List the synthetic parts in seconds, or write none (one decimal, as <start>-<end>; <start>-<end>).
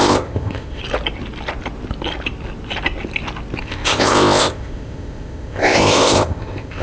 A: 0.0-0.8; 3.6-6.8